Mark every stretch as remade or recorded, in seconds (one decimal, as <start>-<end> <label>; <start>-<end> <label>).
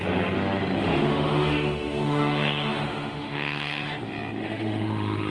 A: 0.0-0.8 recorded; 0.8-4.0 remade; 4.0-4.4 recorded; 4.4-5.3 remade